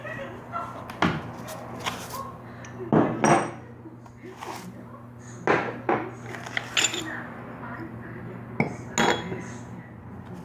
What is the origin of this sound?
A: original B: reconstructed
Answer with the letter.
A